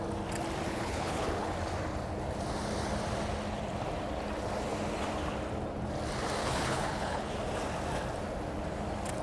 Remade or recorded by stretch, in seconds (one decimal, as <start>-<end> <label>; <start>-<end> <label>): 0.0-0.7 recorded; 0.7-1.5 remade; 1.5-6.4 recorded; 6.4-7.3 remade; 7.3-9.2 recorded